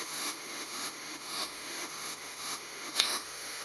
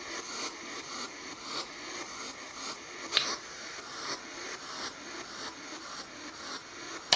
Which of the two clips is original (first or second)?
second